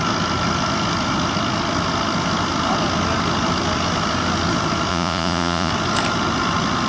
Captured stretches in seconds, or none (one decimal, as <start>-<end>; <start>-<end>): 0.0-4.9; 5.7-6.9